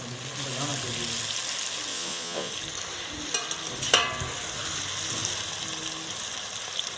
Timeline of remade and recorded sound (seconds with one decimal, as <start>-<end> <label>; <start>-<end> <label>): 0.0-1.9 recorded; 1.9-2.5 remade; 2.5-7.0 recorded